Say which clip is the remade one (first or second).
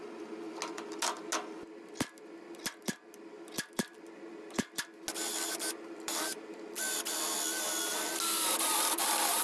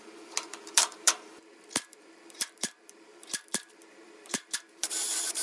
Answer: second